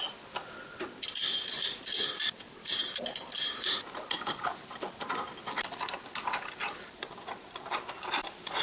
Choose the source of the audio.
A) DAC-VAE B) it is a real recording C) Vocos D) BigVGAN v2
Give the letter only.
B